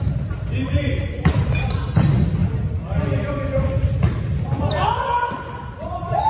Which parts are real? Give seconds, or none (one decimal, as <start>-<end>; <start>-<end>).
0.0-0.6; 1.7-6.3